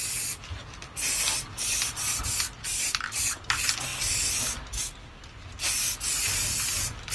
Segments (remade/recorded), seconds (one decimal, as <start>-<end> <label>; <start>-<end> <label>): 0.0-7.1 recorded